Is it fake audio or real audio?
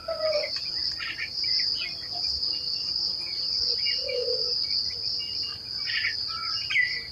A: real